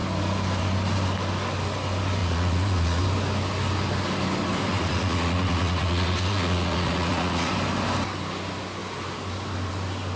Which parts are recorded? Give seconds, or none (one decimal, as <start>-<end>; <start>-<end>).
0.0-2.2; 3.0-4.7; 7.5-10.2